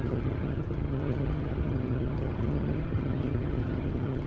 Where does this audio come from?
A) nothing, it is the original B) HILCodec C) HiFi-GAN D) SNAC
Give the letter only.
C